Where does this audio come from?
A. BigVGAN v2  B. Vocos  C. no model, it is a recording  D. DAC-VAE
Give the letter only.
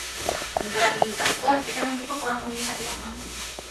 D